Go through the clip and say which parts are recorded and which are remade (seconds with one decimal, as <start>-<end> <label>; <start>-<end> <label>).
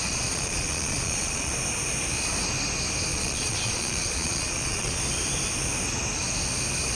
0.0-1.5 remade; 1.5-3.1 recorded; 3.1-5.0 remade; 5.0-6.9 recorded